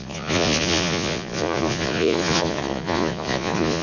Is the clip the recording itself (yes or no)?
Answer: no